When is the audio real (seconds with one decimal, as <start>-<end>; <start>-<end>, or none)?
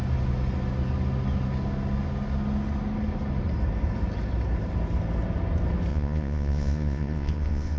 0.0-5.9